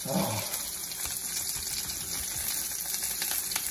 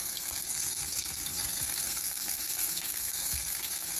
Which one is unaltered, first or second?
first